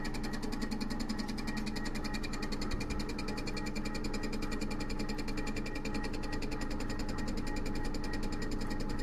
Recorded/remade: recorded